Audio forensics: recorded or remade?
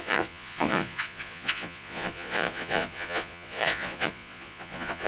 remade